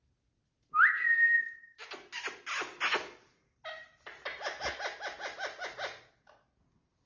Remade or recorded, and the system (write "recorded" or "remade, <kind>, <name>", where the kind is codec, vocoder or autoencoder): recorded